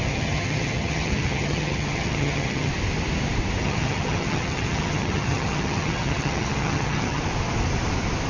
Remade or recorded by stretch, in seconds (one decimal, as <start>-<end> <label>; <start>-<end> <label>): 0.0-2.7 remade; 2.7-3.6 recorded; 3.6-7.2 remade; 7.2-8.3 recorded